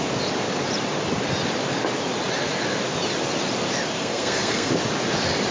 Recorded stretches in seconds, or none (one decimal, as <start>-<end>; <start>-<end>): 0.0-4.0; 4.7-5.5